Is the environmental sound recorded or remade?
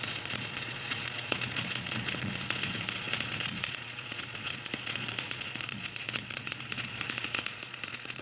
remade